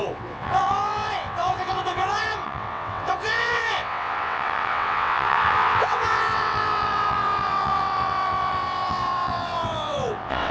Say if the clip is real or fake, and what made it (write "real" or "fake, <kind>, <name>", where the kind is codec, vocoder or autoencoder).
fake, vocoder, WaveNeXt